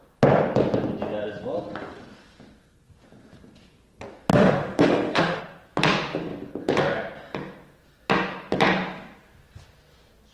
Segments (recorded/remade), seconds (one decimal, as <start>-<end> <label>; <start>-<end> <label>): 0.0-4.3 recorded; 4.3-5.4 remade; 5.4-10.3 recorded